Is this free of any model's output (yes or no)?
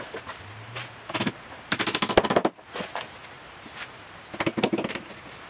yes